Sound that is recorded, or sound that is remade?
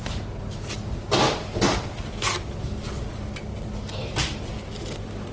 recorded